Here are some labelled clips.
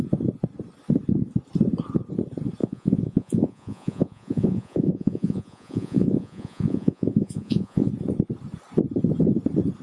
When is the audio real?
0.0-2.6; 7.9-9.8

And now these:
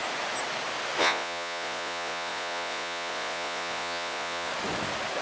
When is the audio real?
0.0-1.0; 4.5-5.2

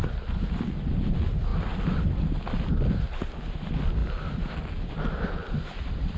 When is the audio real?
0.0-6.2

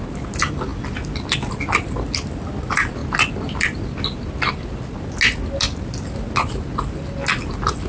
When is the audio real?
0.0-7.9

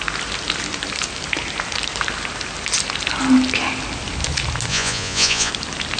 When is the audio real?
0.0-4.7; 5.5-6.0

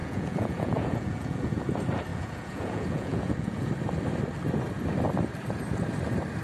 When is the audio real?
1.5-2.1; 3.7-6.4

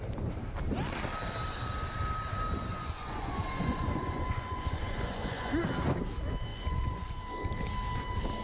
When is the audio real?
0.0-2.7; 5.6-6.5; 7.2-8.4